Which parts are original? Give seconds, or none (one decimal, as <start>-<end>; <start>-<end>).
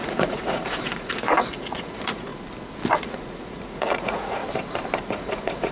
2.3-3.0; 4.4-5.0